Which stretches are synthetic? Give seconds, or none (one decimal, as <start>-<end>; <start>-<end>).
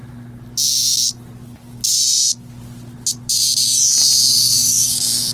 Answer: 4.3-5.3